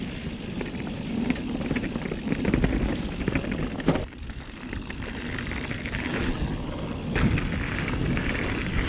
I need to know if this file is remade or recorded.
recorded